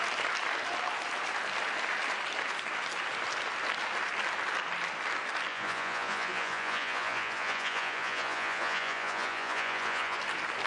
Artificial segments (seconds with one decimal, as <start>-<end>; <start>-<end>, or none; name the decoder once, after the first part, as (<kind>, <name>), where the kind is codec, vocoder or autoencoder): 5.5-10.2 (vocoder, Vocos)